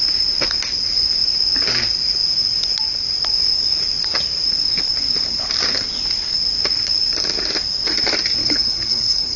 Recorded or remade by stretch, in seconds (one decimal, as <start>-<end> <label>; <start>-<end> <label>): 0.0-8.4 recorded; 8.4-9.4 remade